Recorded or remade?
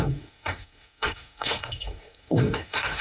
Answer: remade